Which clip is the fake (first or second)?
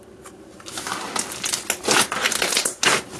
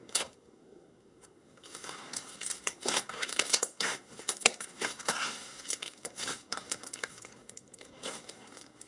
second